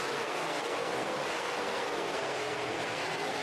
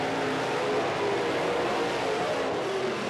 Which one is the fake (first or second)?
first